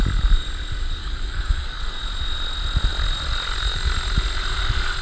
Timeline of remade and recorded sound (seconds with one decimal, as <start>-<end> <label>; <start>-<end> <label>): 0.0-1.0 recorded; 1.0-1.8 remade; 1.8-5.0 recorded